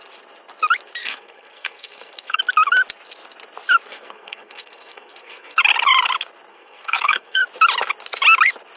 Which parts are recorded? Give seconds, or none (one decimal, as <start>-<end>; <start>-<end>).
0.0-1.0; 2.4-3.9; 5.6-6.5; 7.4-8.8